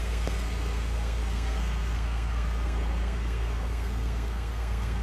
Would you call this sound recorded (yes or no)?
no